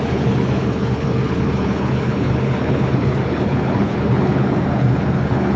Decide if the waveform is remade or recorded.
remade